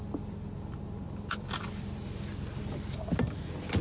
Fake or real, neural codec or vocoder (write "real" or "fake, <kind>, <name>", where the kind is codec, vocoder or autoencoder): real